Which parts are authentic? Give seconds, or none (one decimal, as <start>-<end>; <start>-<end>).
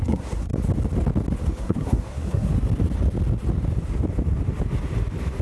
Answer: 0.5-1.6; 2.5-5.4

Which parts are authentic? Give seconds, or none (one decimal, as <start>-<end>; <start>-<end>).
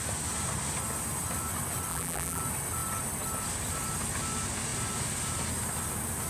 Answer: 0.0-1.9; 2.4-6.3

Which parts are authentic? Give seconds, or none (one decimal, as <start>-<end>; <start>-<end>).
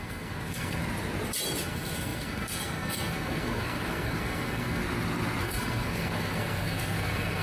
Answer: 0.8-1.6; 4.8-5.4